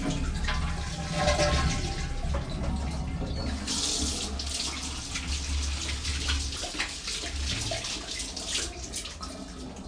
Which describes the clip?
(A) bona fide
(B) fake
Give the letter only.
A